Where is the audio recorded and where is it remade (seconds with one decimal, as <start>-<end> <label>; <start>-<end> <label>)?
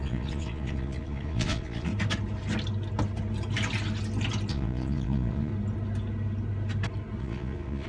0.0-1.9 remade; 1.9-4.5 recorded; 4.5-5.5 remade; 5.5-7.2 recorded; 7.2-7.9 remade